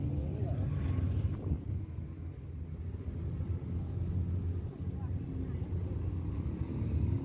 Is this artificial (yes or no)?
no